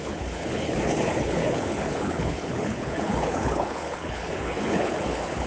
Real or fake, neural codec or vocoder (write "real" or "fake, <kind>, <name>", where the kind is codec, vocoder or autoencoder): fake, codec, HILCodec